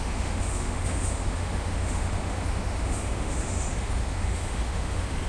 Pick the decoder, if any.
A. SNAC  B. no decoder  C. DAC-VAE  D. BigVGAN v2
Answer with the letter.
C